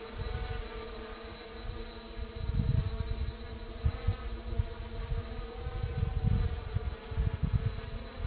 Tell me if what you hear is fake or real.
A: real